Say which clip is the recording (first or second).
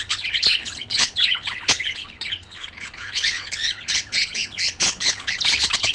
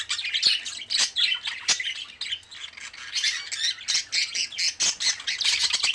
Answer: second